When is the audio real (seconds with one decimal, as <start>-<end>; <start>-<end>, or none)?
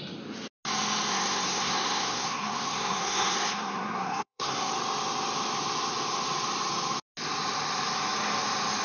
0.0-1.1; 4.7-8.8